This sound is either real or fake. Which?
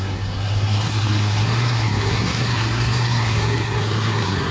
fake